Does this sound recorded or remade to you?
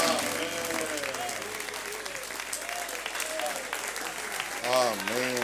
recorded